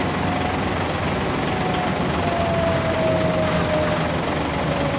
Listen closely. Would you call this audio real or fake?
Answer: real